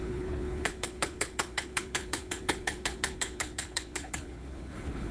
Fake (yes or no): yes